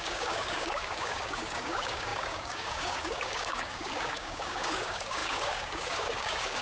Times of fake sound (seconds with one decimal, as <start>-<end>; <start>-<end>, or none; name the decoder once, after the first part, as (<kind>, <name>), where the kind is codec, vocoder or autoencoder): 0.0-6.6 (codec, DAC)